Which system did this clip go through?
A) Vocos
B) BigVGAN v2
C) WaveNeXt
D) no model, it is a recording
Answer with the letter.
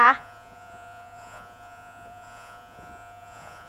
A